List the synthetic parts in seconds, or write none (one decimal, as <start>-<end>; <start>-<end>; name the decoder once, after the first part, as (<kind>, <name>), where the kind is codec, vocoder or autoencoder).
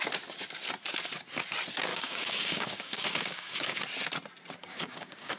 1.9-3.8 (codec, DAC); 4.6-5.4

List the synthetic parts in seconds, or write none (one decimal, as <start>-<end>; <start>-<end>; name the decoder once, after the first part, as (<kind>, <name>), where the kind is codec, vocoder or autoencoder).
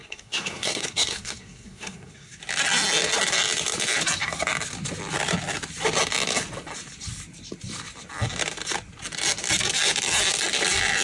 0.0-2.4 (codec, SNAC)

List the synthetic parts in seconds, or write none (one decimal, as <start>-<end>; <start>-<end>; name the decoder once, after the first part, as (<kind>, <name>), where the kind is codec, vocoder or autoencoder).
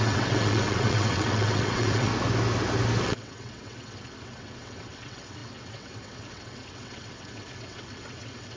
0.0-2.1 (vocoder, WaveNeXt); 3.0-8.6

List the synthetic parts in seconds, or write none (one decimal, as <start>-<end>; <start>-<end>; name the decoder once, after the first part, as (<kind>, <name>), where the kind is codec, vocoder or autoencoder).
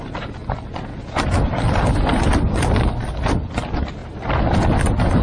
none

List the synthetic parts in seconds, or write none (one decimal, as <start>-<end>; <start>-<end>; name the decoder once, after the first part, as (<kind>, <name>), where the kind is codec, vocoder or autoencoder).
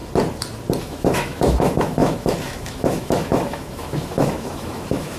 0.8-5.2 (autoencoder, DAC-VAE)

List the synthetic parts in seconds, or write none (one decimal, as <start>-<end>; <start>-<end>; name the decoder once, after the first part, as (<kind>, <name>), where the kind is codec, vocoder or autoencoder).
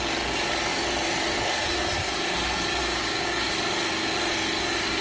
2.8-3.5 (codec, DAC)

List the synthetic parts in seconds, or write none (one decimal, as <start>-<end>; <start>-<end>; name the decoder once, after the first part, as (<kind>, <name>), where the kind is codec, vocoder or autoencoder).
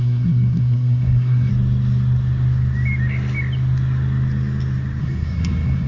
0.0-1.5 (codec, SNAC); 5.0-5.9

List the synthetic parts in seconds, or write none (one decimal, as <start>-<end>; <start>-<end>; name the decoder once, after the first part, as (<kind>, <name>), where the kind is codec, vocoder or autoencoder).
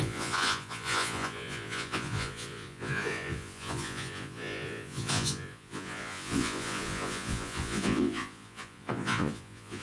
0.0-9.8 (vocoder, Vocos)